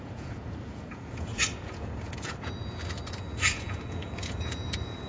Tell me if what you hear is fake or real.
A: fake